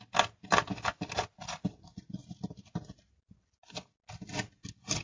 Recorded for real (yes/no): yes